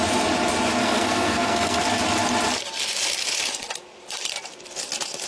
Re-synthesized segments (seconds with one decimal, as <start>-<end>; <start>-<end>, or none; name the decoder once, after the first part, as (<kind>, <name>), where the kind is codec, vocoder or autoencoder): 0.8-1.8 (codec, SNAC)